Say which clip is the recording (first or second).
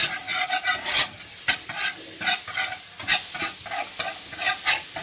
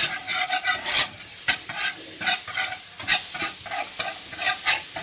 first